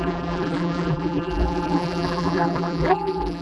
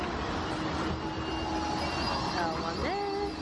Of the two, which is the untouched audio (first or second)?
second